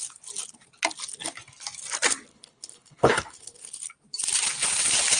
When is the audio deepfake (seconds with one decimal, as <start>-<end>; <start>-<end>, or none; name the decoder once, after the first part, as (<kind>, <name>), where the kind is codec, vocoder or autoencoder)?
2.3-3.7 (codec, HILCodec)